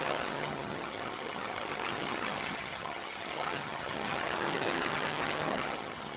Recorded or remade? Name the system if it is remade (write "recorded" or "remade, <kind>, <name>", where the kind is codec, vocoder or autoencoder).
remade, vocoder, HiFi-GAN